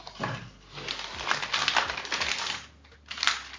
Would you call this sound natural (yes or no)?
yes